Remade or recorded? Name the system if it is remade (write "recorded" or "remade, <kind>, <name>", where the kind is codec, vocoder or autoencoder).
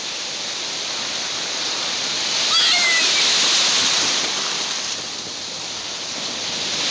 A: recorded